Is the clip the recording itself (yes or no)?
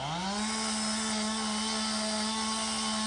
yes